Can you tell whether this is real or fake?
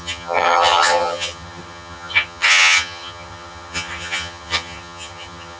fake